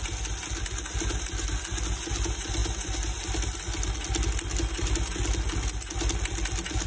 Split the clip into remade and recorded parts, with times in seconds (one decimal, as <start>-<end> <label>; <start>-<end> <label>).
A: 0.0-6.9 recorded